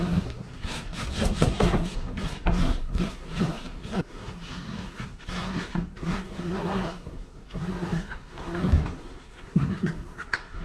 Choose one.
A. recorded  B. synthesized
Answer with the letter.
B